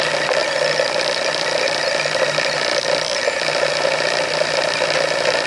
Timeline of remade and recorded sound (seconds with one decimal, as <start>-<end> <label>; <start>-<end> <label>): 0.0-5.5 recorded